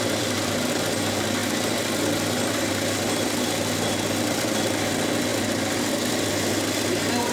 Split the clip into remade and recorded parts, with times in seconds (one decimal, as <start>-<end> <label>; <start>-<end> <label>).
0.0-7.3 recorded